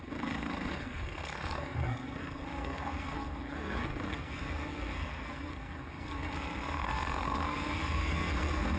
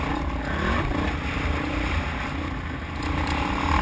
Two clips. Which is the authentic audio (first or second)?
second